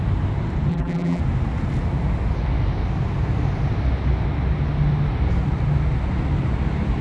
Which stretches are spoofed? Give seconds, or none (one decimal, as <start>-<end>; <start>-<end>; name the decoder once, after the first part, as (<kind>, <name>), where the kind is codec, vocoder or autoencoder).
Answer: 0.7-1.2 (vocoder, BigVGAN v2)